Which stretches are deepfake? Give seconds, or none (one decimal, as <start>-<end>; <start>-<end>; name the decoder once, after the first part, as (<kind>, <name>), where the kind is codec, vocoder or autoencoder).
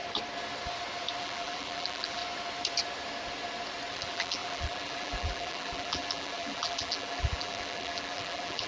1.2-2.2 (vocoder, BigVGAN v2); 3.9-8.7